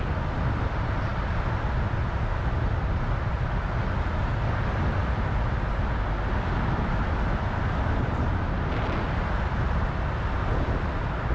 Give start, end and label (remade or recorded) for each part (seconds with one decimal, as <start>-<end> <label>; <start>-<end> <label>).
0.0-11.3 recorded